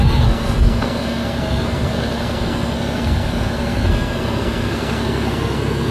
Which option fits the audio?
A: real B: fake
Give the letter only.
B